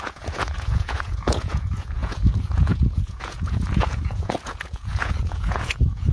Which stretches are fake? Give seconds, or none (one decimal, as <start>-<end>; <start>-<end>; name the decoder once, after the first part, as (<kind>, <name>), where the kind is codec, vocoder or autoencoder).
0.0-6.1 (vocoder, Vocos)